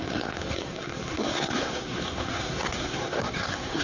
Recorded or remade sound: remade